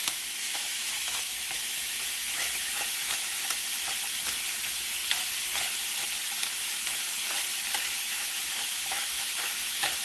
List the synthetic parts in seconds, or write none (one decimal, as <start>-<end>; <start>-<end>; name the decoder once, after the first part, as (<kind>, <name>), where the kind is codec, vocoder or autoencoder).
0.0-3.6 (autoencoder, DAC-VAE); 4.6-5.0; 6.6-7.2; 7.8-10.0